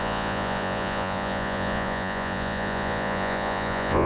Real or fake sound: fake